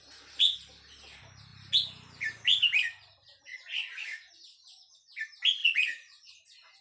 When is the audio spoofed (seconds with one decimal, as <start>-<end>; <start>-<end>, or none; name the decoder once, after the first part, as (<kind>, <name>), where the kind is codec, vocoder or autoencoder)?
3.5-4.3 (vocoder, Vocos); 5.6-6.3